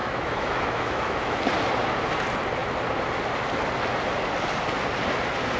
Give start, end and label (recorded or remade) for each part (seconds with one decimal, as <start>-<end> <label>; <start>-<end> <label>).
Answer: 0.0-1.4 remade; 1.4-5.6 recorded